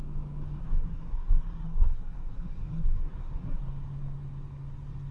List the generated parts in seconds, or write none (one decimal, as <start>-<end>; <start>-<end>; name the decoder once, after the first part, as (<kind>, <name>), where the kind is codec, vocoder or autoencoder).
0.6-3.6 (codec, SNAC)